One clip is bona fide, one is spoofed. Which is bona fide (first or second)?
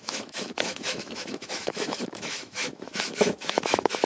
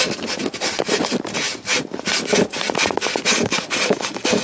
second